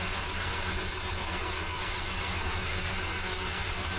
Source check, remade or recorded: remade